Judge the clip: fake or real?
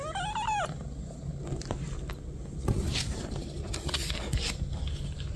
real